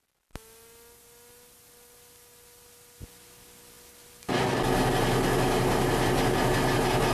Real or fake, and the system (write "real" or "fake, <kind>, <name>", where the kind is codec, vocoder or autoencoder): real